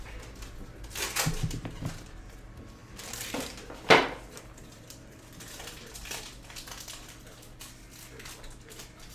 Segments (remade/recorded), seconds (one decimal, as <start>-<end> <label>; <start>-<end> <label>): 0.0-2.8 recorded; 2.8-7.7 remade; 7.7-9.1 recorded